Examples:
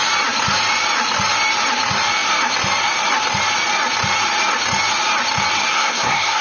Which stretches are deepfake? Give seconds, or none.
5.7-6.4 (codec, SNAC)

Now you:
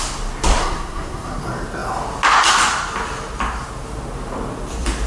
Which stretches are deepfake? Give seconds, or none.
0.6-1.4 (codec, SNAC)

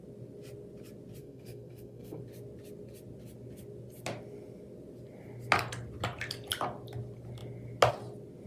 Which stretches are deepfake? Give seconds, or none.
1.2-2.2 (codec, SNAC)

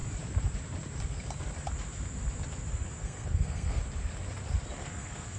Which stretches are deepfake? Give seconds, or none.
3.0-3.8 (codec, SNAC); 4.8-5.4

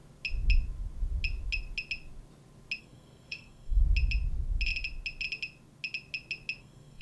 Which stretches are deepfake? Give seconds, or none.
2.8-3.8 (codec, SNAC); 6.6-7.0